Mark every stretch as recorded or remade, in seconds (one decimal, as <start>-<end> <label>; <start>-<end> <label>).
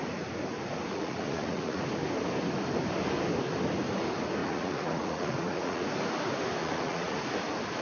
0.0-0.9 recorded; 0.9-1.8 remade; 1.8-4.4 recorded; 4.4-5.9 remade; 5.9-6.6 recorded; 6.6-7.2 remade; 7.2-7.8 recorded